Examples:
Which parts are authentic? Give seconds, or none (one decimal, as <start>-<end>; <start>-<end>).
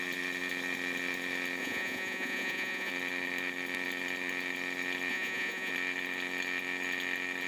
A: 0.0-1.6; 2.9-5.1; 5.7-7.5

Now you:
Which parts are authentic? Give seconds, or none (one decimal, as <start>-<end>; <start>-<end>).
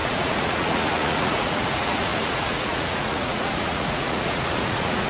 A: none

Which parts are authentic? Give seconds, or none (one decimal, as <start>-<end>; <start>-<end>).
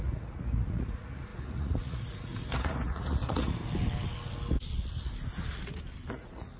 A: 3.6-6.1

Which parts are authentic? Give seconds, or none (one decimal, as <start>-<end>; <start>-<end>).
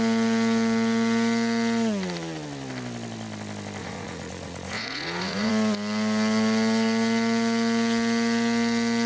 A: 0.0-3.8; 5.5-9.1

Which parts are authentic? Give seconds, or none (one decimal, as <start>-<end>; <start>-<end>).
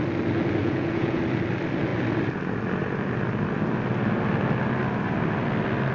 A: 0.0-0.6; 1.2-5.9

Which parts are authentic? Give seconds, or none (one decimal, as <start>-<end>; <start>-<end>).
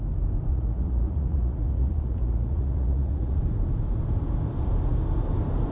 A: 0.0-0.5; 3.4-5.7